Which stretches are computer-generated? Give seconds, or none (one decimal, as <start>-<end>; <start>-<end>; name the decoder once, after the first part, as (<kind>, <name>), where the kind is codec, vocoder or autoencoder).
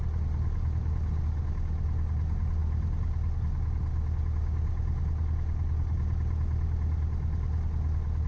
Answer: none